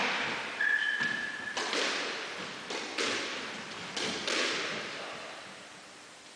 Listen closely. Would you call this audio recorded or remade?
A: remade